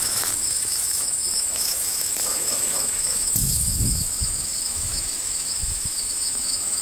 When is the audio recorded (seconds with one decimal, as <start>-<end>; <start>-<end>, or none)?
none